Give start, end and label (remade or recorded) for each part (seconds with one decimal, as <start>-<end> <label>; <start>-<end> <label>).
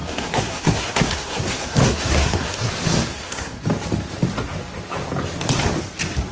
0.0-2.7 remade; 2.7-3.1 recorded; 3.1-3.6 remade; 3.6-6.3 recorded